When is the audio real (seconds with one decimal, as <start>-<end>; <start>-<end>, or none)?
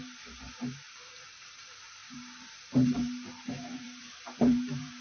none